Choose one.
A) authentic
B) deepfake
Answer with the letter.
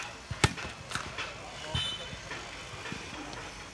A